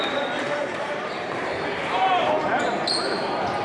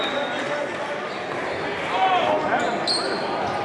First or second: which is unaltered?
second